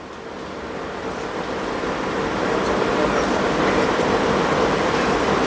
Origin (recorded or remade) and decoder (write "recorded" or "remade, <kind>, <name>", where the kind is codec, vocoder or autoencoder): recorded